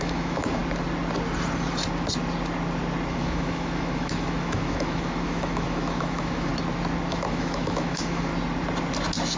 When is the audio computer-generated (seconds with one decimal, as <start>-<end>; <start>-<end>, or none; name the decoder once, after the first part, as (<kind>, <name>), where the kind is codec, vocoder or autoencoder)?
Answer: 0.0-0.6 (autoencoder, DAC-VAE); 3.1-6.5; 7.1-8.3

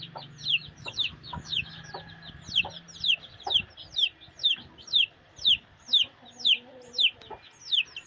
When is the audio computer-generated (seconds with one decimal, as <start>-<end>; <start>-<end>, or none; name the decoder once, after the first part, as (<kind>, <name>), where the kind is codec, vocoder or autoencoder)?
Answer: 0.6-1.9 (autoencoder, DAC-VAE)

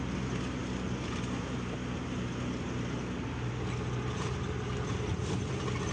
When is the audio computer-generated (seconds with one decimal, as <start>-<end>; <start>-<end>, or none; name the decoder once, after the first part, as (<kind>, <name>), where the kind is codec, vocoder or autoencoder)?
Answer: none

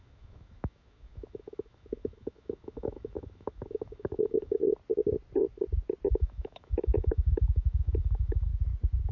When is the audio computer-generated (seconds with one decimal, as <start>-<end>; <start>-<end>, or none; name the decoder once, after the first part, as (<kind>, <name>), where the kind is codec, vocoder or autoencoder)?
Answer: 0.0-4.6 (autoencoder, DAC-VAE); 6.1-8.5

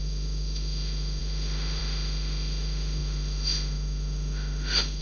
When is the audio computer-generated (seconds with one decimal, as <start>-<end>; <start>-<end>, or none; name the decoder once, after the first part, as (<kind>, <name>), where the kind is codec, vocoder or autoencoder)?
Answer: 0.0-5.0 (autoencoder, DAC-VAE)

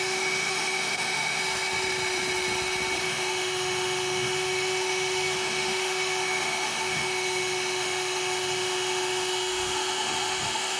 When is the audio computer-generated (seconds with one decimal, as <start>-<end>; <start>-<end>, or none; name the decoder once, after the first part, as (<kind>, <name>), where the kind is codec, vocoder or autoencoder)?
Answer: 0.0-1.4 (autoencoder, DAC-VAE); 3.0-10.8